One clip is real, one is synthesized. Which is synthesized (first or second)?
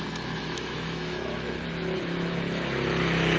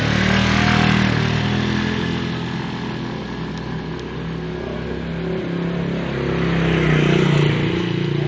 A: first